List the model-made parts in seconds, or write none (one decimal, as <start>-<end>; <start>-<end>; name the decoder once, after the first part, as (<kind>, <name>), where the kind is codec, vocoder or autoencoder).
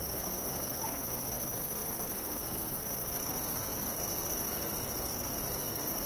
0.0-6.1 (codec, SNAC)